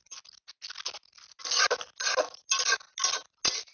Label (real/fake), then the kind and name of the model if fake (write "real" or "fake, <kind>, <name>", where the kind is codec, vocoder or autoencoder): real